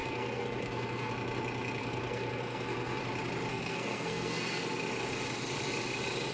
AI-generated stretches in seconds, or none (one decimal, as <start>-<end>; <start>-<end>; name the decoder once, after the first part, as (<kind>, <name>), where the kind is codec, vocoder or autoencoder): 0.0-1.1 (codec, SNAC); 1.8-3.0; 3.5-4.6